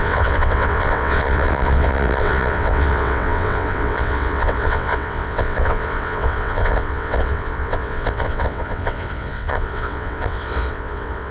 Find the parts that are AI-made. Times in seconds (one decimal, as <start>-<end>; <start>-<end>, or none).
0.0-11.3